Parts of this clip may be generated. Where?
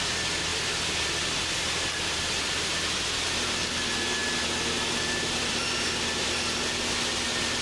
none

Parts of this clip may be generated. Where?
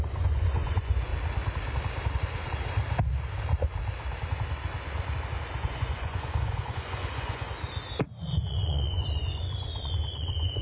0.0-1.1 (vocoder, Vocos); 5.6-7.5; 8.1-10.6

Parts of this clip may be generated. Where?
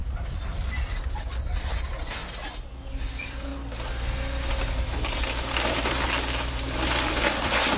0.5-2.2 (vocoder, BigVGAN v2); 3.1-3.5; 7.1-7.8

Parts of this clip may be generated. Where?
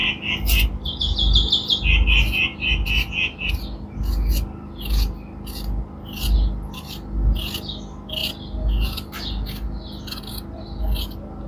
none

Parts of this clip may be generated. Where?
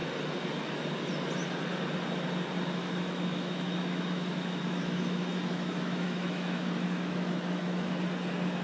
2.8-7.9 (autoencoder, DAC-VAE)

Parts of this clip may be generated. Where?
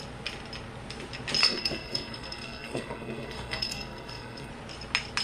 1.4-4.5 (codec, SNAC)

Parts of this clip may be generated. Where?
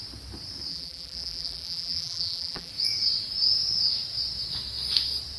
0.7-2.7 (vocoder, BigVGAN v2)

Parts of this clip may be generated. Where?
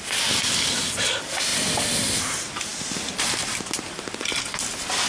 none